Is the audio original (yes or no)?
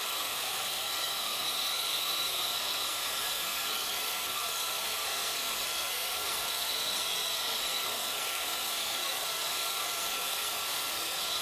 no